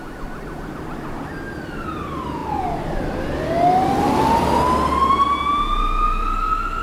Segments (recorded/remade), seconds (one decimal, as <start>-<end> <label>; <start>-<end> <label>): 0.0-6.8 recorded